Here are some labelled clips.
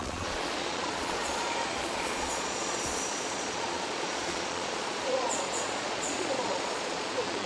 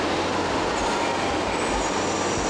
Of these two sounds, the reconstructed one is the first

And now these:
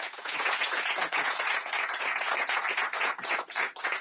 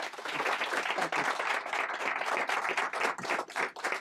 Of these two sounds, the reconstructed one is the first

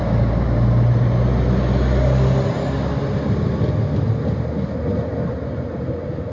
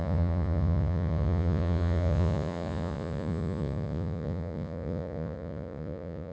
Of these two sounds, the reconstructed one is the second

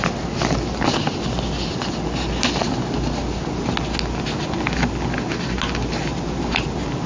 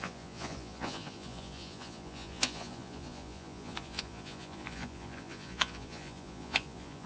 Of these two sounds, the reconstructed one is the second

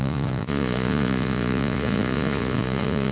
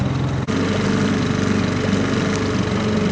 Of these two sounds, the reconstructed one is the first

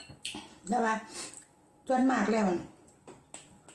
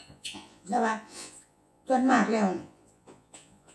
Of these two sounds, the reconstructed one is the second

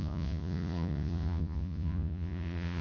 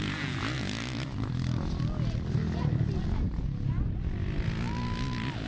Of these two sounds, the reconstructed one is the first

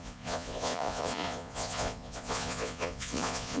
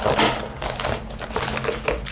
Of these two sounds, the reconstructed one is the first